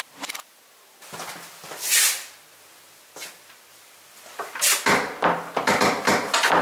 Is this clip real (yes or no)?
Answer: yes